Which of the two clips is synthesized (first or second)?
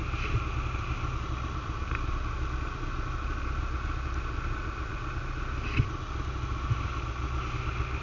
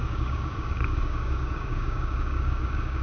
second